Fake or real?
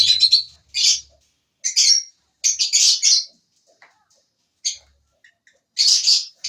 real